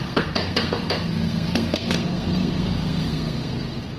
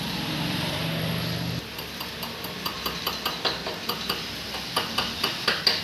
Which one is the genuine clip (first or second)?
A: second